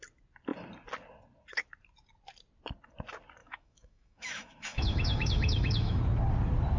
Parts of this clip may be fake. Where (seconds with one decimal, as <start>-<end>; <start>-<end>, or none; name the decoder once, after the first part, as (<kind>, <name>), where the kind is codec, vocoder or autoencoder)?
3.4-6.0 (autoencoder, DAC-VAE)